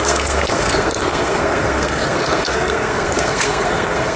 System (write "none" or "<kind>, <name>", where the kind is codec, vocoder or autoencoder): codec, SNAC